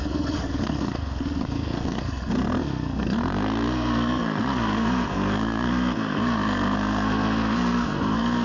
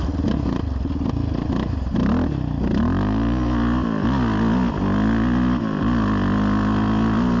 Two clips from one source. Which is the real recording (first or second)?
second